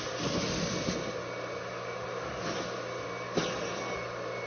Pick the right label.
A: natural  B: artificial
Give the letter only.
A